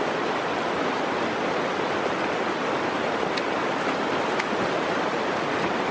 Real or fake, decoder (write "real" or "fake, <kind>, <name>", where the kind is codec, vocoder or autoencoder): real